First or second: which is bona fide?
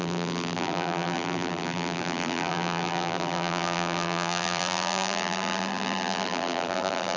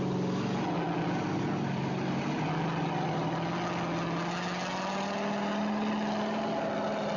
second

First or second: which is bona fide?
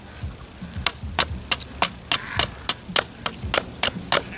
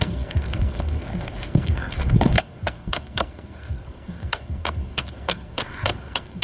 first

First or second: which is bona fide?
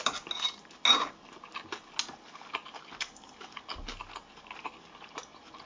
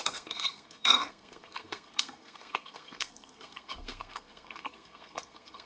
first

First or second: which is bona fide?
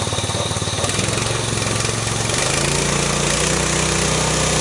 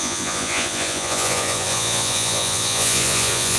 first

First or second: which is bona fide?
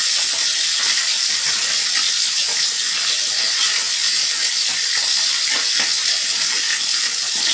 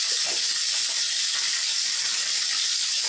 first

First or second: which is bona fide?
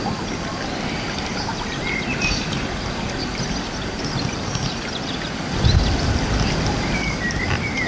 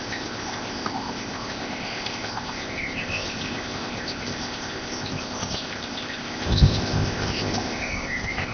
first